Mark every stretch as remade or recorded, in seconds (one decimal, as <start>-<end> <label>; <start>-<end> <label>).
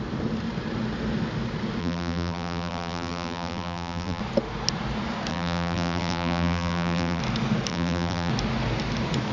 0.0-1.8 recorded; 1.8-4.2 remade; 4.2-5.3 recorded; 5.3-7.2 remade; 7.2-7.7 recorded; 7.7-8.3 remade; 8.3-9.3 recorded